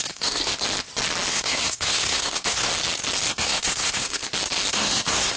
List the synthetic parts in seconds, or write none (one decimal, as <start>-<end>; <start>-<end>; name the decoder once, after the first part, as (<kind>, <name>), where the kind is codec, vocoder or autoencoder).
0.0-0.5 (codec, SNAC); 1.3-2.7; 3.3-4.2; 4.7-5.4